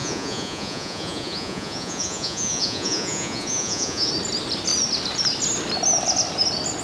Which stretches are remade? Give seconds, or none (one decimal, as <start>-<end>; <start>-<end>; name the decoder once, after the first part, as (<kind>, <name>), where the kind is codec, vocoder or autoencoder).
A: 0.0-4.1 (vocoder, Vocos)